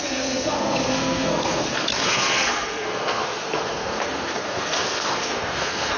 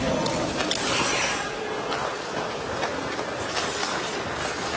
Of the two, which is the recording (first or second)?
second